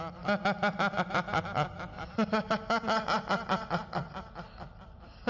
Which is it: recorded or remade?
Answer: recorded